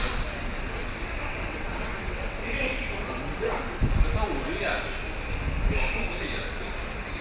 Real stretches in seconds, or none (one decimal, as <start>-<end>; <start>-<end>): 0.0-0.8; 3.6-7.2